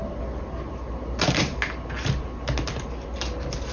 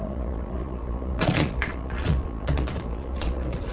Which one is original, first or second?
first